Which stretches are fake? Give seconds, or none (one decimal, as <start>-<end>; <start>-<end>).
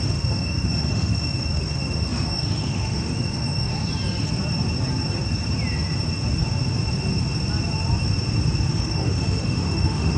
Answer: 0.0-3.7; 8.7-10.2